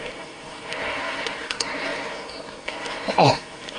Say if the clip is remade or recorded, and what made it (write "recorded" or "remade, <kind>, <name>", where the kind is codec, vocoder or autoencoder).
remade, codec, SNAC